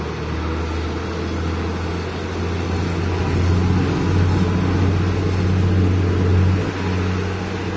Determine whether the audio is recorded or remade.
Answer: recorded